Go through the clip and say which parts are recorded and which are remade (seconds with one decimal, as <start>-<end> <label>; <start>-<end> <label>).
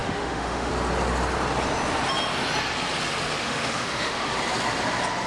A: 0.0-0.7 remade; 0.7-3.4 recorded; 3.4-4.3 remade; 4.3-5.3 recorded